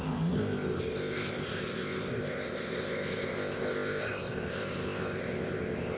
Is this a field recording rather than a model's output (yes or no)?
no